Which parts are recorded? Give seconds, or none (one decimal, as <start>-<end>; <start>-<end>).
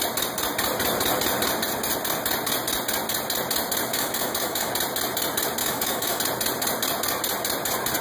0.0-3.9; 4.7-5.6; 6.2-8.0